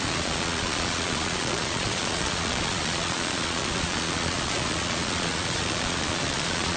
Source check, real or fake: fake